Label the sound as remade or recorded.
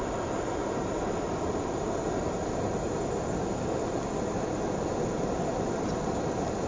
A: recorded